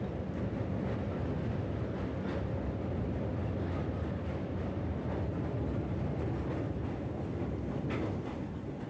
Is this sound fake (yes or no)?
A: no